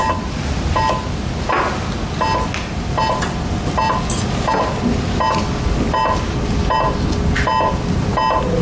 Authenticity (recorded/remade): recorded